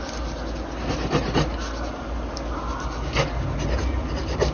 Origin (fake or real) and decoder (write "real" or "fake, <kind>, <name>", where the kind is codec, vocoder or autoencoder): real